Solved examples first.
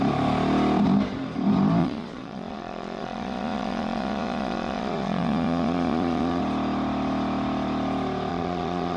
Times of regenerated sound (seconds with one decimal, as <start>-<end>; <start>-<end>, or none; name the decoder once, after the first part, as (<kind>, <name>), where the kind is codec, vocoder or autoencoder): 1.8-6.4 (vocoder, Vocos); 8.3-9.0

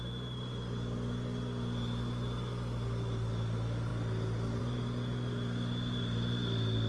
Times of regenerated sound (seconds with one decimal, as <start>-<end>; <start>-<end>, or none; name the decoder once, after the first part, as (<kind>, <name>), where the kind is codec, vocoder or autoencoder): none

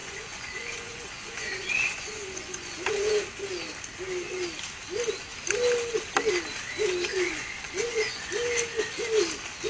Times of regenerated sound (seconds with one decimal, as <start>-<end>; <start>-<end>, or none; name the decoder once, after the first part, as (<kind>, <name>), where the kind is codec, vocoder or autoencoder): 0.0-3.1 (vocoder, Vocos); 7.1-8.3